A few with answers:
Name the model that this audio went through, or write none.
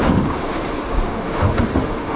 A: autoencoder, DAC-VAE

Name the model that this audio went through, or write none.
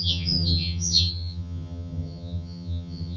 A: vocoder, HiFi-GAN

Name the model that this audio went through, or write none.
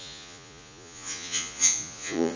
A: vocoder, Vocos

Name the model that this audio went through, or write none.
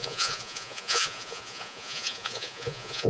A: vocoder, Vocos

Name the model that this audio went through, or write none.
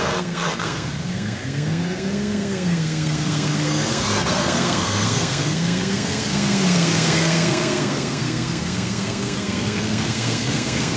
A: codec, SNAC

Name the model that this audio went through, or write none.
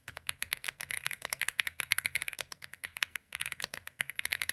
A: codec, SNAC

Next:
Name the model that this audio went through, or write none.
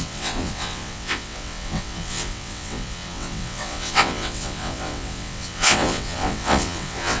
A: vocoder, WaveNeXt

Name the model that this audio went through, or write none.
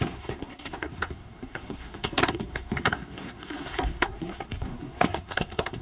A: codec, SNAC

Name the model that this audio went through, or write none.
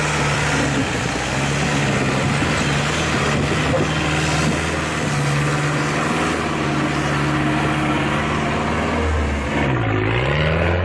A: none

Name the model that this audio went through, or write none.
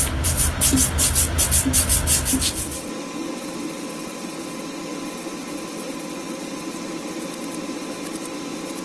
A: none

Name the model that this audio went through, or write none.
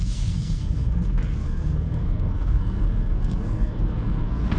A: codec, SNAC